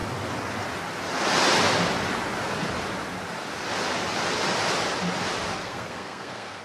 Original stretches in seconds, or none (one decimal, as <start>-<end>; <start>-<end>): 0.0-5.5